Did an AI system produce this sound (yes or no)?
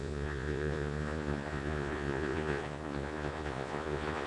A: yes